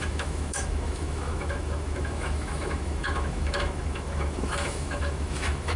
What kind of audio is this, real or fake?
fake